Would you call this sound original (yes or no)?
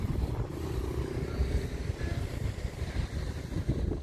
yes